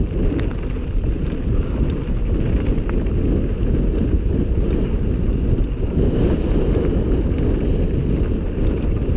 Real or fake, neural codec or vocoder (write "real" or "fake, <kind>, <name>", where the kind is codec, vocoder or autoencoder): real